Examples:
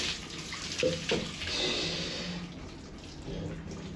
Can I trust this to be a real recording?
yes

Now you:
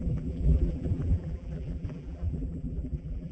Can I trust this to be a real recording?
no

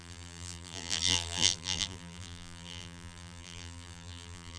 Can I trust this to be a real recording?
no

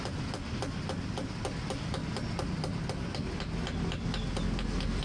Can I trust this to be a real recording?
yes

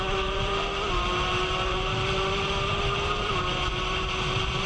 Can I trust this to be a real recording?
no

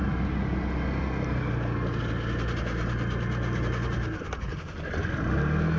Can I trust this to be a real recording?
yes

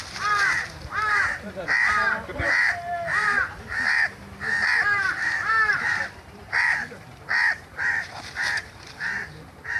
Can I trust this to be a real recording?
no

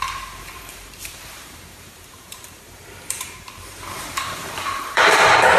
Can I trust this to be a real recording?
no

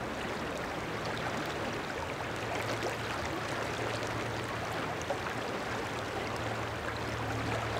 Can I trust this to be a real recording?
yes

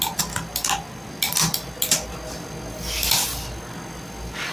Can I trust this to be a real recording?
yes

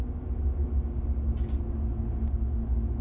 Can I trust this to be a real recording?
yes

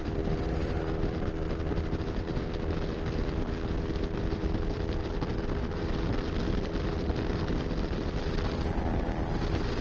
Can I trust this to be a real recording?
no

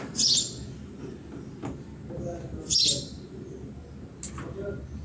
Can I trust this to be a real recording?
yes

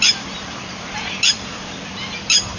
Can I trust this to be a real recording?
no